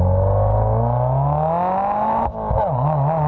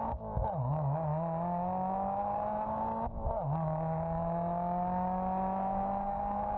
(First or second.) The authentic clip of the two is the first